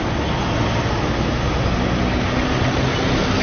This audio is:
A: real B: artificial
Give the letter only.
A